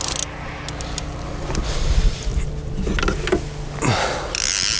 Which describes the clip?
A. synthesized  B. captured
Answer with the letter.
B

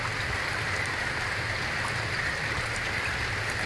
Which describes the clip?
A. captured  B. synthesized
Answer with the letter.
A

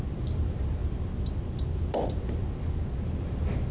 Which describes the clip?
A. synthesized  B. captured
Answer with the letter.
B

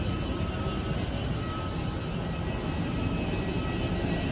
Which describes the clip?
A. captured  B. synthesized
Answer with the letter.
A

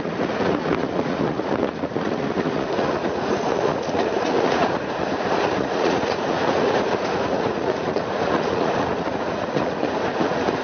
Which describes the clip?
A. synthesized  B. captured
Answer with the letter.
A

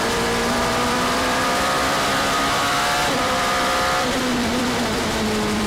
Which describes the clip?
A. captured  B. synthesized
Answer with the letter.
B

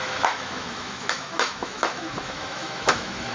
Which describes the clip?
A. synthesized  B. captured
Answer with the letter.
A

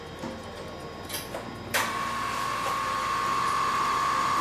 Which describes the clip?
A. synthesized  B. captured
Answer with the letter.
A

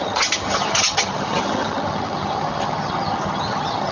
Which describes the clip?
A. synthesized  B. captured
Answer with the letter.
A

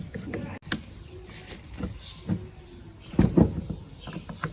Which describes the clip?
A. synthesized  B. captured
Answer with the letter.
B